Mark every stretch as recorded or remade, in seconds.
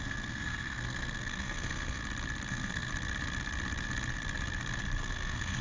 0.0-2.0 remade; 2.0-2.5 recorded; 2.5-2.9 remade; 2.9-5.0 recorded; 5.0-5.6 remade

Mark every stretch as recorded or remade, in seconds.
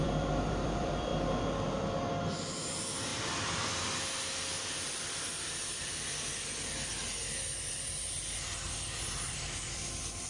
0.0-1.1 remade; 1.1-2.7 recorded; 2.7-3.1 remade; 3.1-7.7 recorded; 7.7-10.3 remade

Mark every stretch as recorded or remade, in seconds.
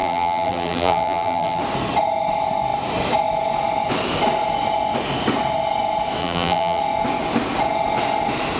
0.0-1.6 remade; 1.6-6.2 recorded; 6.2-6.8 remade; 6.8-8.6 recorded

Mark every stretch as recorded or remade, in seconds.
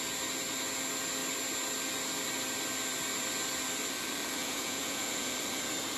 0.0-4.4 recorded; 4.4-5.3 remade; 5.3-6.0 recorded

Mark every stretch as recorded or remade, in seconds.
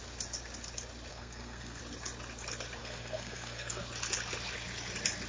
0.0-1.1 recorded; 1.1-1.8 remade; 1.8-2.8 recorded; 2.8-3.8 remade; 3.8-5.3 recorded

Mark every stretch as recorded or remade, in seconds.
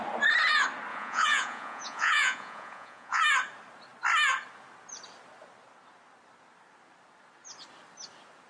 0.0-0.9 recorded; 0.9-3.2 remade; 3.2-8.5 recorded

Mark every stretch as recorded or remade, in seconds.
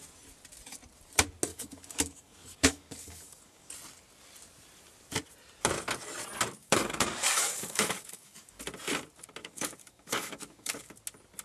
0.0-1.5 recorded; 1.5-3.7 remade; 3.7-6.6 recorded; 6.6-8.6 remade; 8.6-9.4 recorded; 9.4-10.9 remade; 10.9-11.4 recorded